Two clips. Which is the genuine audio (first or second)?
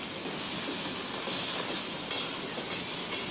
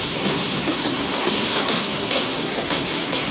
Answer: first